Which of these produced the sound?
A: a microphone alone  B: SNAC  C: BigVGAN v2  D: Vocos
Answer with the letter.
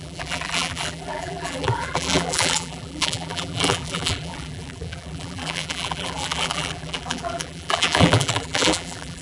C